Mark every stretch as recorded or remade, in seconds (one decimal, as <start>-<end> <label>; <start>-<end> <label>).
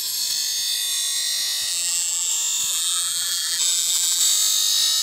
0.0-1.7 recorded; 1.7-2.3 remade; 2.3-2.7 recorded; 2.7-4.2 remade; 4.2-5.0 recorded